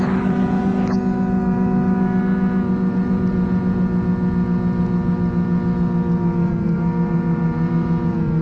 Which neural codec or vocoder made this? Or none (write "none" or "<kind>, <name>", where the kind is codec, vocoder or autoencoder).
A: none